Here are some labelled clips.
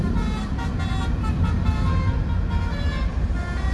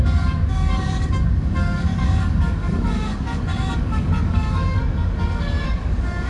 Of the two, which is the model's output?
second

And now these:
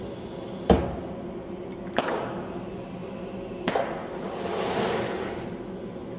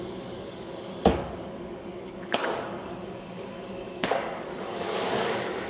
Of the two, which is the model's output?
second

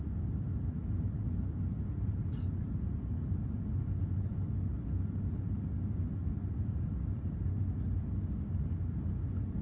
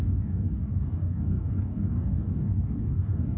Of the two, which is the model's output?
second